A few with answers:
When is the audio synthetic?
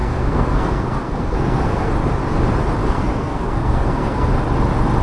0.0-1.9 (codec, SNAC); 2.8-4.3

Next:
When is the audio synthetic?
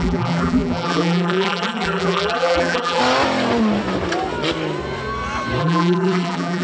0.0-3.0 (vocoder, BigVGAN v2); 5.6-6.6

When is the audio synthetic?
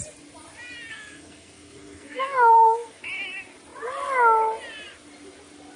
0.9-3.0 (codec, SNAC)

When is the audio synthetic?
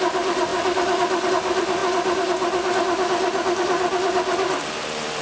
0.0-5.2 (vocoder, BigVGAN v2)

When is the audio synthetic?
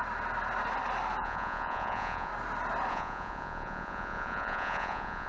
1.2-2.3 (vocoder, Vocos); 2.9-5.3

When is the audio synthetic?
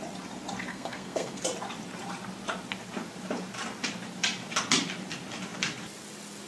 0.7-1.4 (codec, SNAC)